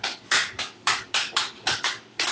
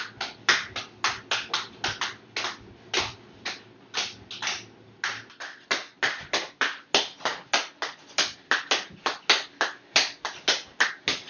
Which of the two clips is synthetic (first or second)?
first